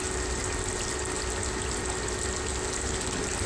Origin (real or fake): real